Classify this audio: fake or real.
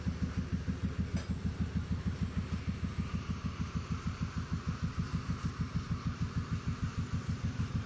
real